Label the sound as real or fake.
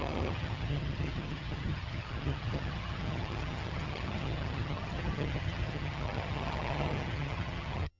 fake